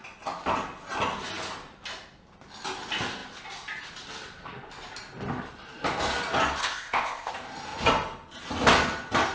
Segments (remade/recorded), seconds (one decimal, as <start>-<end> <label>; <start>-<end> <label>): 0.0-6.6 recorded; 6.6-7.3 remade; 7.3-9.3 recorded